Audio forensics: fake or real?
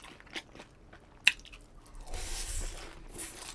real